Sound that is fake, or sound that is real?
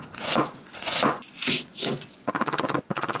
fake